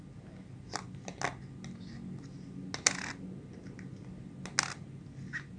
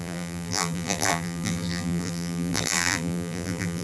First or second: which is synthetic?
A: second